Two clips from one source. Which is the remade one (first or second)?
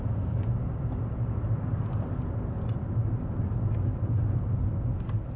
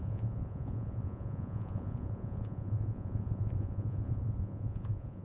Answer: second